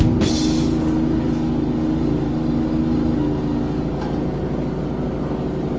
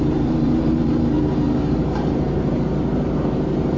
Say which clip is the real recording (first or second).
first